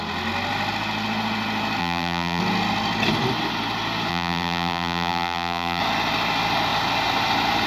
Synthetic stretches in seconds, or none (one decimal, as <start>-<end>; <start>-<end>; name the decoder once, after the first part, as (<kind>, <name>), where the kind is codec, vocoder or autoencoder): 1.8-2.4 (vocoder, BigVGAN v2); 4.1-5.8